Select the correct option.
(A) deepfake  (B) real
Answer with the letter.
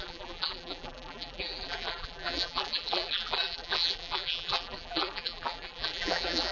A